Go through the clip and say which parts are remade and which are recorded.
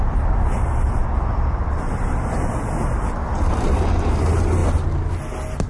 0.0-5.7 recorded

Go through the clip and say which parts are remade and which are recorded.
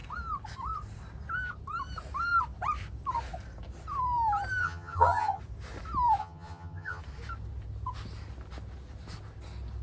0.0-4.6 recorded; 4.6-5.4 remade; 5.4-6.2 recorded; 6.2-7.0 remade; 7.0-9.8 recorded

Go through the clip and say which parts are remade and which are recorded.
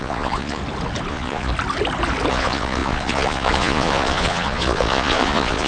0.0-0.6 remade; 0.6-1.1 recorded; 1.1-1.5 remade; 1.5-2.3 recorded; 2.3-5.7 remade